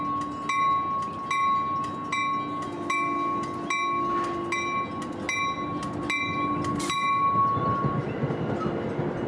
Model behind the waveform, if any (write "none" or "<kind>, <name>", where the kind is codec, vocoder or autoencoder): none